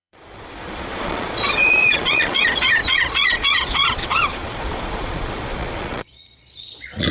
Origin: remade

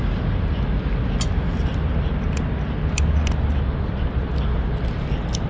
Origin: recorded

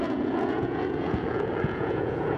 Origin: remade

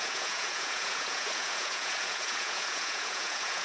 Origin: remade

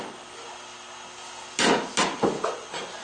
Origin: recorded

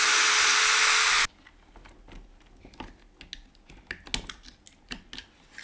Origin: recorded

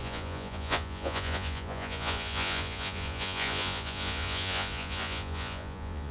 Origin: remade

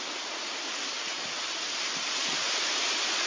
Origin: recorded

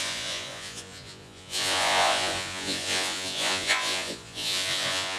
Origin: remade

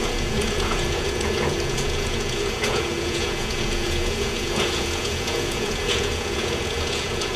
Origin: remade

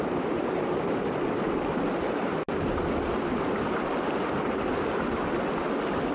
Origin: recorded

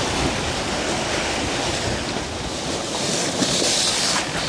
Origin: recorded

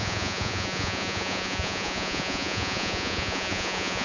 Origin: remade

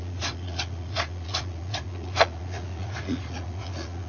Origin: remade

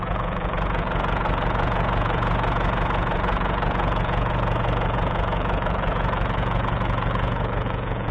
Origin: remade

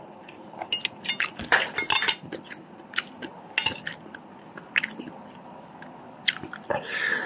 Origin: recorded